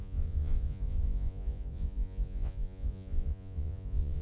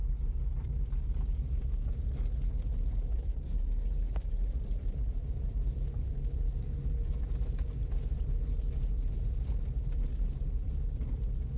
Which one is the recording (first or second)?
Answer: second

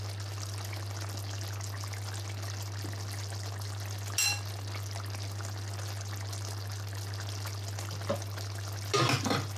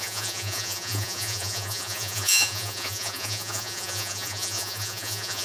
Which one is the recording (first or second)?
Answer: first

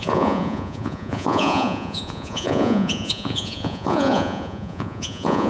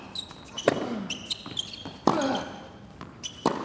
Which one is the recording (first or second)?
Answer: second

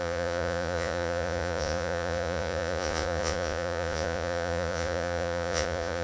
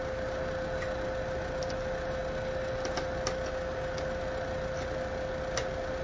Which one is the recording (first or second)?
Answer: second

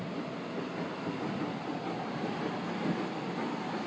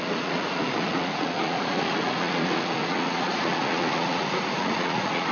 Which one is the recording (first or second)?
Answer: first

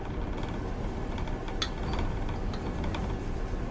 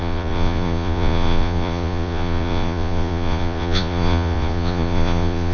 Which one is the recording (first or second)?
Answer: first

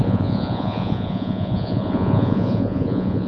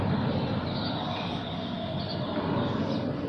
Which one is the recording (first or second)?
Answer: second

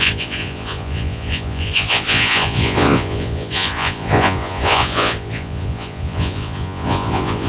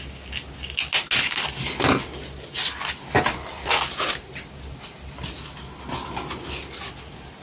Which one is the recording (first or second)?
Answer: second